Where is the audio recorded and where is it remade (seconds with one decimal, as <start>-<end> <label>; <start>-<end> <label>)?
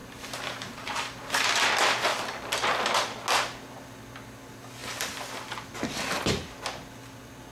0.0-1.7 remade; 1.7-2.1 recorded; 2.1-2.7 remade; 2.7-7.5 recorded